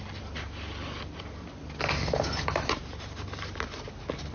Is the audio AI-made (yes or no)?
no